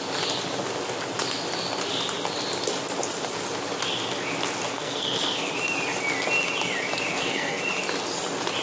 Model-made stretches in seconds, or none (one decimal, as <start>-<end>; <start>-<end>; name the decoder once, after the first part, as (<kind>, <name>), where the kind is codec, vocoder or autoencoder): 4.7-5.5 (codec, SNAC); 7.1-7.6

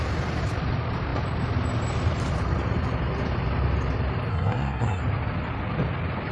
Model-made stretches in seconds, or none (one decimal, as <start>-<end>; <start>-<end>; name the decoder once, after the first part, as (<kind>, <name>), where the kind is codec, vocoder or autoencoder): 4.3-5.0 (codec, SNAC)